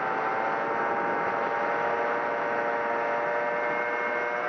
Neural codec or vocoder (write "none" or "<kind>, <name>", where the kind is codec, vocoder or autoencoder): none